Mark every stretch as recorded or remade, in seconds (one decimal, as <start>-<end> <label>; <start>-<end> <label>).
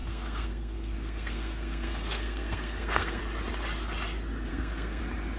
0.0-3.2 remade; 3.2-4.5 recorded; 4.5-5.0 remade; 5.0-5.4 recorded